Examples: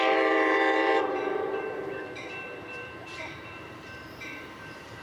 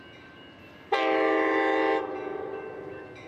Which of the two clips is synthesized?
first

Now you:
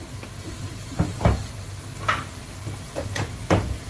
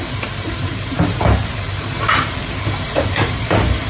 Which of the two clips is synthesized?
second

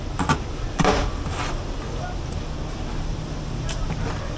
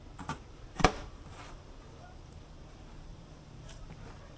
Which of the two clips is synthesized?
second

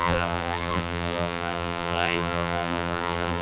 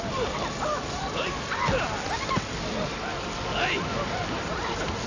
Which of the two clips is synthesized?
first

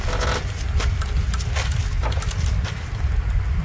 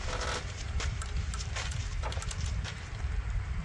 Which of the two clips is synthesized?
second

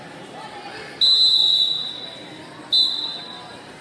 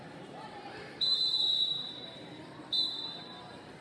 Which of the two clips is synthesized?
second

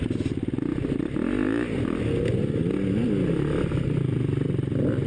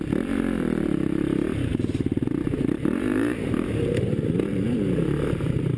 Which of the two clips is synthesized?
second